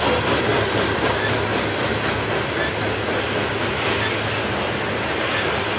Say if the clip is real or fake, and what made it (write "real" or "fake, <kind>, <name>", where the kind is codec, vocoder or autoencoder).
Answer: real